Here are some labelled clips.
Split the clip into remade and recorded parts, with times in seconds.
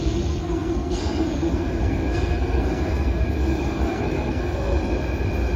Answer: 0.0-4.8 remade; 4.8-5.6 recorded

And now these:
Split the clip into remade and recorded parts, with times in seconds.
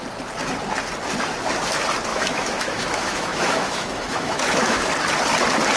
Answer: 0.0-2.1 recorded; 2.1-4.9 remade; 4.9-5.8 recorded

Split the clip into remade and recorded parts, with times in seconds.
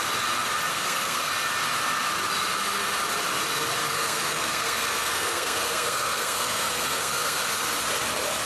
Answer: 0.0-0.7 recorded; 0.7-1.3 remade; 1.3-3.8 recorded; 3.8-7.4 remade; 7.4-8.5 recorded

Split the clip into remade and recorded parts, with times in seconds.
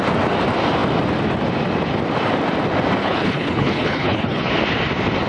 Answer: 0.0-3.0 recorded; 3.0-4.5 remade; 4.5-5.3 recorded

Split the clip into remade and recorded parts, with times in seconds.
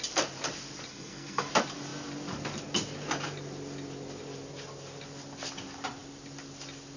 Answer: 0.0-0.9 recorded; 0.9-1.5 remade; 1.5-7.0 recorded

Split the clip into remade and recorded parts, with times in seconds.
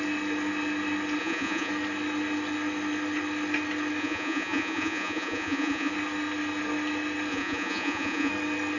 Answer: 0.0-1.2 recorded; 1.2-1.7 remade; 1.7-4.0 recorded; 4.0-5.9 remade; 5.9-7.3 recorded; 7.3-8.3 remade; 8.3-8.8 recorded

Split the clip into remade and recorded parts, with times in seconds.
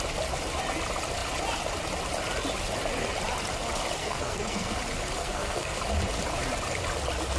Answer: 0.0-4.0 recorded; 4.0-4.8 remade; 4.8-5.2 recorded; 5.2-5.8 remade; 5.8-7.4 recorded